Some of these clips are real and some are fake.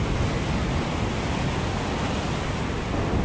real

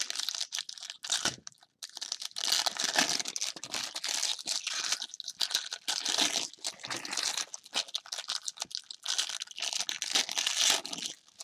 real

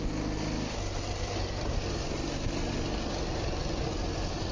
real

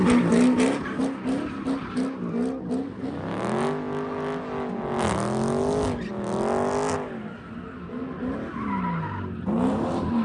real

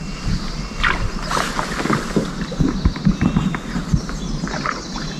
real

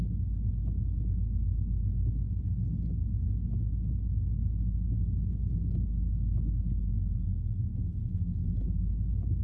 real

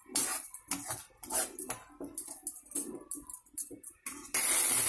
real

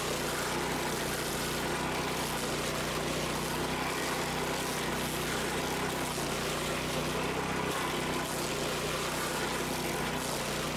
real